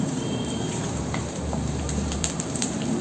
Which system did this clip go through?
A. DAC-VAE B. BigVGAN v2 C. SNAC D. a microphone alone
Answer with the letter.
B